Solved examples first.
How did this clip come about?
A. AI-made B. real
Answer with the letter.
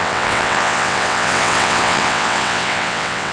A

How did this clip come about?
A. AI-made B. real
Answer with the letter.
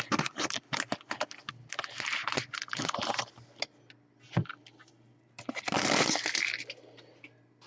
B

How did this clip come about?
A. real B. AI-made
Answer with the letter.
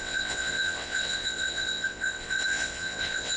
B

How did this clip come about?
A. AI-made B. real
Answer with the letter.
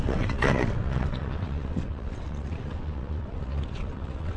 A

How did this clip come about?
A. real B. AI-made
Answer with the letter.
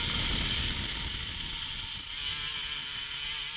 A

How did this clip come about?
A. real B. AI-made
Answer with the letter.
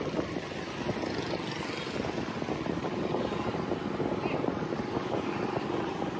A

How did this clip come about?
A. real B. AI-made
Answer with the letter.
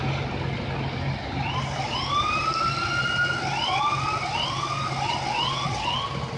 A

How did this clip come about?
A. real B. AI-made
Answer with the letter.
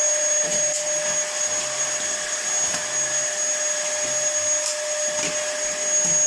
A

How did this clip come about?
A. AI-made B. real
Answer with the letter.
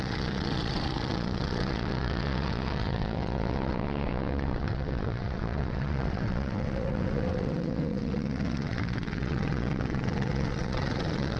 A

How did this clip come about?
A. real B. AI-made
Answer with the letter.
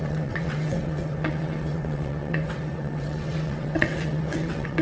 B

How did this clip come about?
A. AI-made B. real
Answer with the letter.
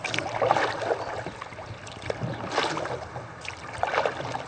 B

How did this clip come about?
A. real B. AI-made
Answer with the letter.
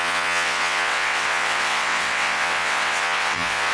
B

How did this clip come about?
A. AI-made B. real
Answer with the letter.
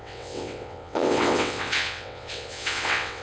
A